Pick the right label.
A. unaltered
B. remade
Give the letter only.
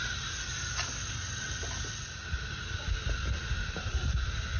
A